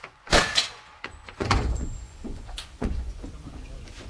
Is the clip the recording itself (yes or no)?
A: no